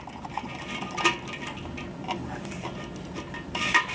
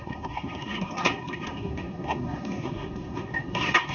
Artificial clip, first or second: second